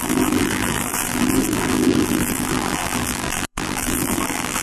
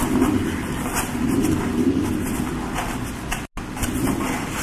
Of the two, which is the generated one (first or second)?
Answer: first